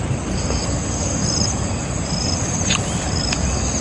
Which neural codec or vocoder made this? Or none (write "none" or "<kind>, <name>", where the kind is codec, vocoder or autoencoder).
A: none